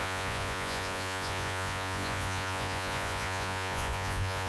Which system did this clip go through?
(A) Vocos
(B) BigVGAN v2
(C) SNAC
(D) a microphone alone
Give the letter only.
A